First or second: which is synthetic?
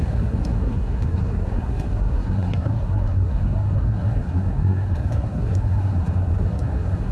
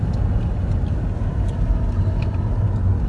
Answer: first